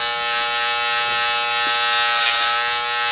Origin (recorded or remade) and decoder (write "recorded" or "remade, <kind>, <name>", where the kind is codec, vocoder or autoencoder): recorded